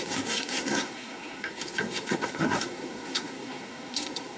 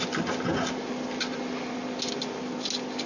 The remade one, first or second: first